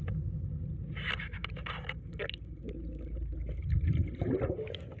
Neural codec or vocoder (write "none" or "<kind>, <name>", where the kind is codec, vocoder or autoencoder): none